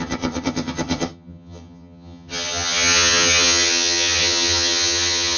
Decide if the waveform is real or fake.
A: fake